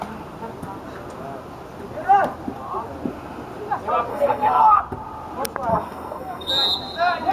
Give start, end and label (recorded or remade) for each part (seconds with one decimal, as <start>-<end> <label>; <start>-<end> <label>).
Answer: 0.0-4.1 recorded; 4.1-4.8 remade; 4.8-5.7 recorded; 5.7-6.5 remade; 6.5-7.3 recorded